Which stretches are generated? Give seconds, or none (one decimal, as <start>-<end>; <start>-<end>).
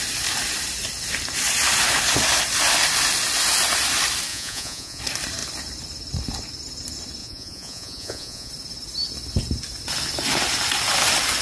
4.3-5.0; 7.2-8.5